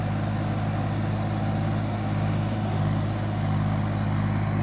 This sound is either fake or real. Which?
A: real